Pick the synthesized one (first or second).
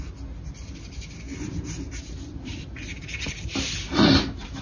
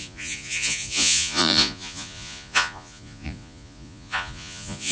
second